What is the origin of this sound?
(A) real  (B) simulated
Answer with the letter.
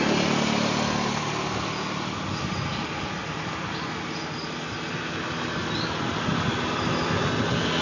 A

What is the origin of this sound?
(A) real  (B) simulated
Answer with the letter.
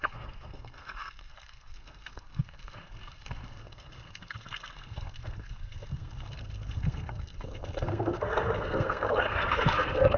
B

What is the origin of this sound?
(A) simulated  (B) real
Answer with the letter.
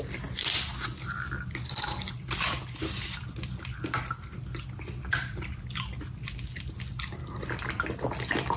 B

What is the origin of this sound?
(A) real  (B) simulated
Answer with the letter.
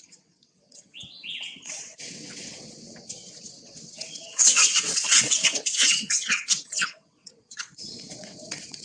B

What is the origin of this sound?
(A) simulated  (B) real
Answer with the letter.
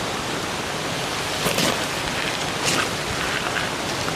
B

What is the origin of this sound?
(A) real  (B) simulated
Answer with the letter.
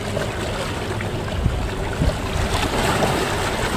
A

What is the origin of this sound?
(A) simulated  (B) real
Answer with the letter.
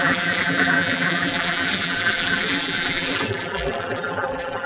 A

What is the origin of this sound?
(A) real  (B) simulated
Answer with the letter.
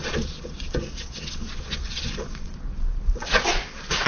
B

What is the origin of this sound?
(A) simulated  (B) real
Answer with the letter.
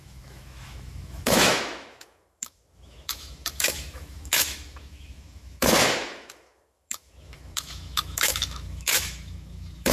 A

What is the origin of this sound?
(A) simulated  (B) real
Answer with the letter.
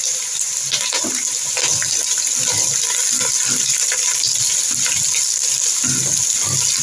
B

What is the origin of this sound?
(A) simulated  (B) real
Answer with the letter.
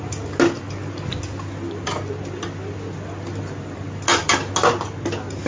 B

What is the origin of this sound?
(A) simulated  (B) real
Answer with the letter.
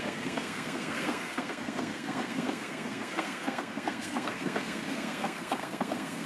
A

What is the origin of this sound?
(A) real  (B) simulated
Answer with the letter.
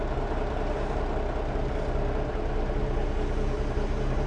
A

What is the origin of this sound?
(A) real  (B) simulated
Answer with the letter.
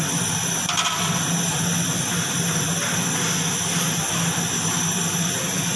A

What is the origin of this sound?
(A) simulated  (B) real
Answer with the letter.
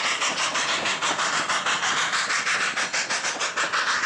B